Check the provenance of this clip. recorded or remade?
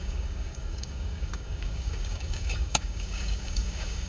remade